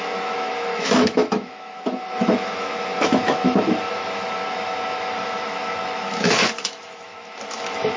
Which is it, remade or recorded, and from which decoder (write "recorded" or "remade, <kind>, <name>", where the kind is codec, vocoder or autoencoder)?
remade, autoencoder, DAC-VAE